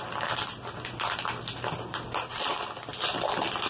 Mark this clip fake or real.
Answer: real